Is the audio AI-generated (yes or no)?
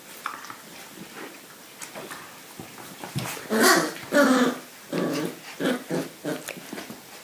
no